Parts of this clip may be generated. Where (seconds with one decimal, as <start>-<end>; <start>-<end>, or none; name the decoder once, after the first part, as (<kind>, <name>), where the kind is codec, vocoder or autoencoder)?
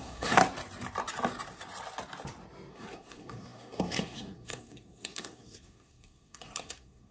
0.0-0.4 (codec, SNAC); 2.7-7.1